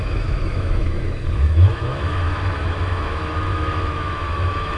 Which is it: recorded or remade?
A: remade